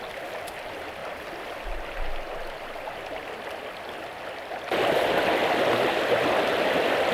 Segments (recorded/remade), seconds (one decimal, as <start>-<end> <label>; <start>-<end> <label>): 0.0-7.1 recorded